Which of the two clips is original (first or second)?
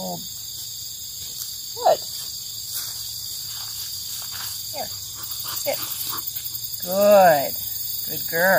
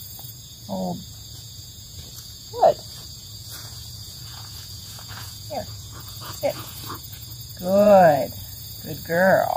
first